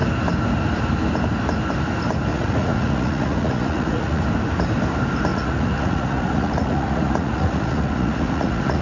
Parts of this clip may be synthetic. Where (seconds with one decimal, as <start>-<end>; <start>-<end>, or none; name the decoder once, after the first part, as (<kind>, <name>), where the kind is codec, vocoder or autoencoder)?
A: 2.3-4.2 (vocoder, Vocos); 5.3-8.8